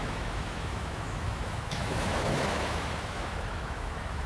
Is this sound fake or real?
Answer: fake